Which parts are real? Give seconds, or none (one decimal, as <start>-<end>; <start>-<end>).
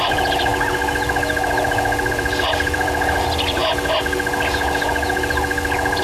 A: 0.5-2.1; 3.6-6.0